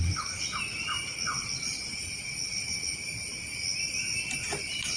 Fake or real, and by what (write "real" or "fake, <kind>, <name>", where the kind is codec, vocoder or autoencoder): real